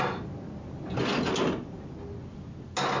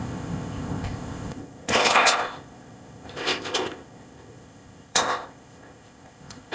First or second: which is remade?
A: second